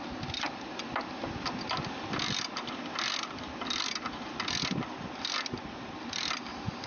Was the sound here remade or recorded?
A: recorded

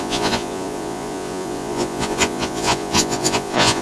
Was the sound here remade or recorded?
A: remade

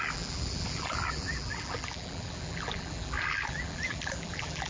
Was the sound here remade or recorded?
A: remade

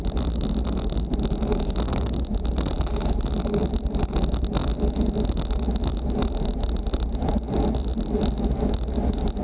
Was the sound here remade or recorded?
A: recorded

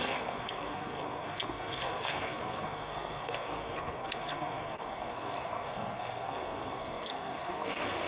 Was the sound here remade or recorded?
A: remade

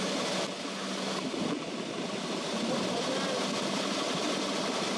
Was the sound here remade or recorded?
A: recorded